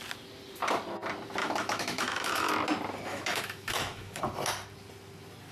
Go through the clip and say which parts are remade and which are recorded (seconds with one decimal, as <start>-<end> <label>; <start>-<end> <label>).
0.0-1.4 recorded; 1.4-2.5 remade; 2.5-3.1 recorded; 3.1-4.2 remade; 4.2-5.5 recorded